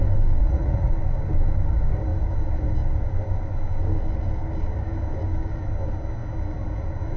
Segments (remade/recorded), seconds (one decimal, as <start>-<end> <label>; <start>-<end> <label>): 0.0-0.4 recorded; 0.4-0.9 remade; 0.9-7.2 recorded